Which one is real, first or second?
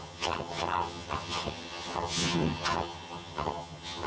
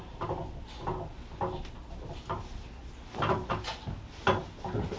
second